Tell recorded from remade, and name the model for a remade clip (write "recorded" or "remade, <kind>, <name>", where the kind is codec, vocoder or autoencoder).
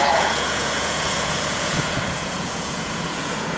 remade, vocoder, Vocos